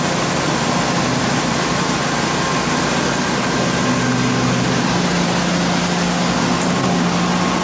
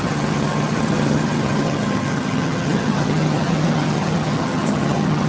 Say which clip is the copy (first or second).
second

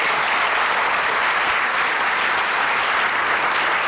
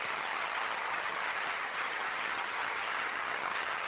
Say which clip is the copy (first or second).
second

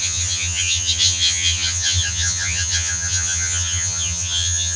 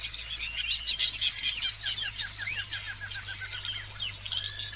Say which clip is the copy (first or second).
first